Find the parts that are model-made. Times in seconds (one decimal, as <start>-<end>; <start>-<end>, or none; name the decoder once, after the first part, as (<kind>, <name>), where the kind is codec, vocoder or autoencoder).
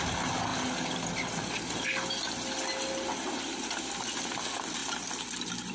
none